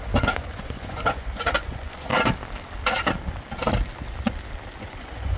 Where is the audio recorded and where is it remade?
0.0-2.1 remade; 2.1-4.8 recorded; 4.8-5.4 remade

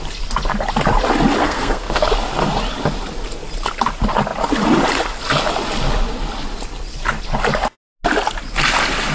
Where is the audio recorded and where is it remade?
0.0-1.4 recorded; 1.4-2.0 remade; 2.0-9.1 recorded